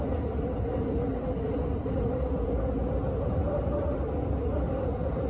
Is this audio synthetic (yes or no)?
no